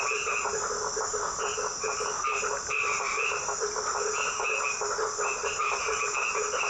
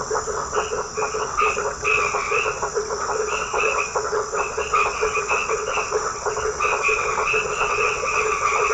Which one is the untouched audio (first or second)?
first